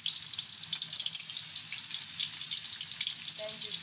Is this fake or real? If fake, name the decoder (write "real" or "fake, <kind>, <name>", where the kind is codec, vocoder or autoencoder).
real